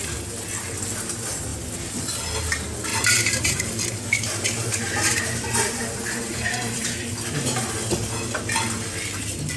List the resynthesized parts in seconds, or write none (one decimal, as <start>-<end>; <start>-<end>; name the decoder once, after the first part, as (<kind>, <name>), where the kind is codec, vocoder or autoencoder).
2.9-7.7 (vocoder, BigVGAN v2)